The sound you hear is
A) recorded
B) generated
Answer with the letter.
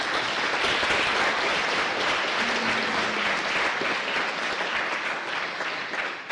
A